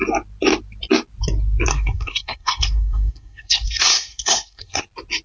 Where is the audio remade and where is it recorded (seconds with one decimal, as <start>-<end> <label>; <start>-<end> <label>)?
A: 0.0-1.7 recorded; 1.7-4.8 remade; 4.8-5.2 recorded